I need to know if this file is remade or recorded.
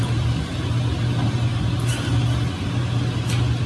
recorded